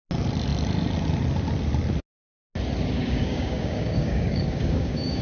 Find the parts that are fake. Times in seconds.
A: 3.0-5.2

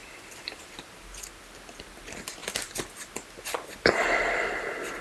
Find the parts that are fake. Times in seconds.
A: none

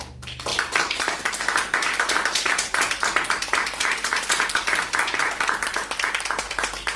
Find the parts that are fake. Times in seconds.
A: 0.5-1.3

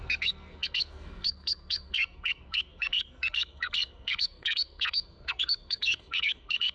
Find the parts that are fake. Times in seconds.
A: 0.0-6.7

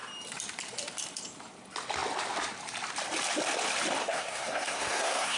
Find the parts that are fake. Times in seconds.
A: 4.0-5.4

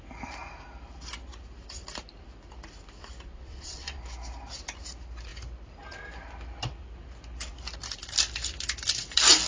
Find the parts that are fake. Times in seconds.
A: 3.4-4.0

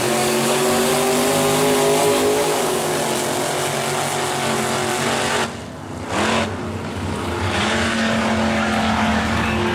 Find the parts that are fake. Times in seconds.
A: 0.0-0.9; 2.0-3.0; 6.9-9.7